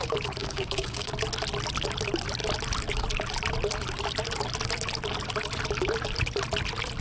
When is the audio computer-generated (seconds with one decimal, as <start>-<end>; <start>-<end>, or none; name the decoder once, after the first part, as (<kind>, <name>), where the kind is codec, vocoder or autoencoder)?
0.4-1.1 (codec, DAC)